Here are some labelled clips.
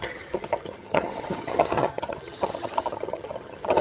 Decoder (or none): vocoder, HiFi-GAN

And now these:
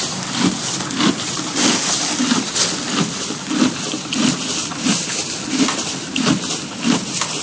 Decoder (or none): none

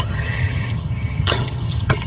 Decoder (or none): vocoder, HiFi-GAN